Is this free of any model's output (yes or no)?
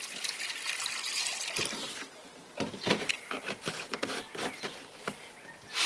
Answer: yes